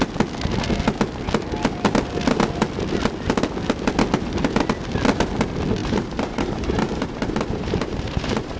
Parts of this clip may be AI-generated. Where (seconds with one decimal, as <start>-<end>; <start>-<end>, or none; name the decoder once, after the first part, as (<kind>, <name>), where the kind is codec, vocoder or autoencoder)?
5.8-8.6 (vocoder, BigVGAN v2)